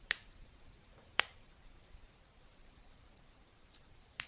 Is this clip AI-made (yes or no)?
yes